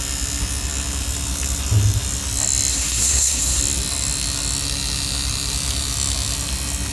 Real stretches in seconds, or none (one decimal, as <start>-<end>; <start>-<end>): 0.0-2.7; 3.6-6.9